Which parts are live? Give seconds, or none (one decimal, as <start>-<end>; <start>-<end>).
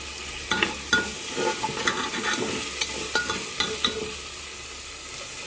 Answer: 0.0-5.5